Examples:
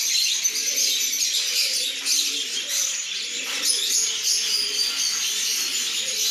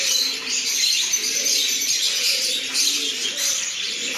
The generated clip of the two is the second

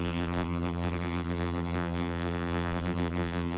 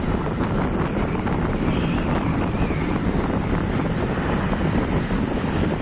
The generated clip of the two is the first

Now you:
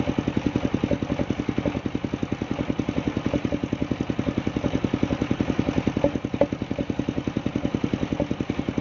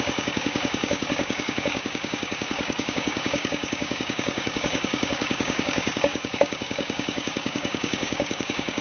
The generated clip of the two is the second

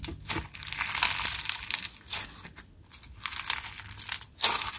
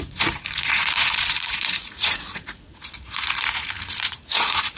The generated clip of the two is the second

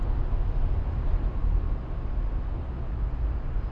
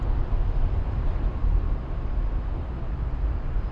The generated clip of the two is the second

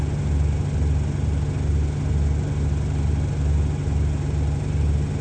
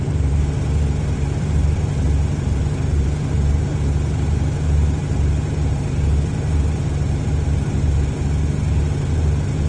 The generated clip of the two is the second